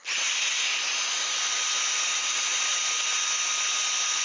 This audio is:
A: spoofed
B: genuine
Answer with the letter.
B